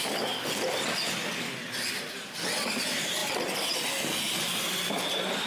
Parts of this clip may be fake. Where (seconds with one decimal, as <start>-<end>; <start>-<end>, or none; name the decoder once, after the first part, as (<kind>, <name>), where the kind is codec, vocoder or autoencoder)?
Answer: none